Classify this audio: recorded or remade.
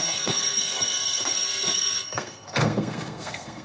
remade